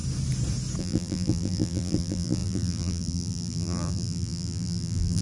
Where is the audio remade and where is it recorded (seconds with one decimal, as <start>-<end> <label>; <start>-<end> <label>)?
0.0-0.8 recorded; 0.8-5.2 remade